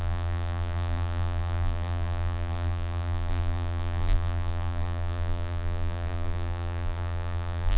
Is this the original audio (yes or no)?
no